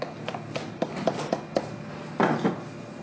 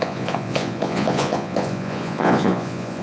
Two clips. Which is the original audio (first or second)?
first